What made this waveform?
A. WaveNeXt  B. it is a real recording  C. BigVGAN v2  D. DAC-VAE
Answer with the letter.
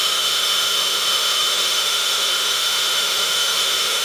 D